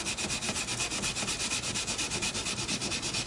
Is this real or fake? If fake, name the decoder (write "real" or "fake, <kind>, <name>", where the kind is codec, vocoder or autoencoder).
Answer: real